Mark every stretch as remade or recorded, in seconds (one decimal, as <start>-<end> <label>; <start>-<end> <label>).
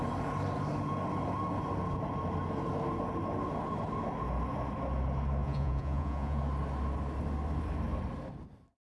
0.0-5.4 recorded; 5.4-6.4 remade; 6.4-8.9 recorded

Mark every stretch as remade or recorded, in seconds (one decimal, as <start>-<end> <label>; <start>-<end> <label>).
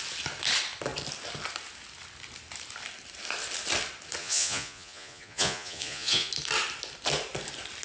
0.0-4.2 recorded; 4.2-6.3 remade; 6.3-7.8 recorded